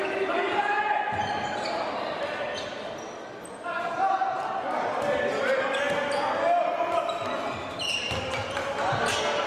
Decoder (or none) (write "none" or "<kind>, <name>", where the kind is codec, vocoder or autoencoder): none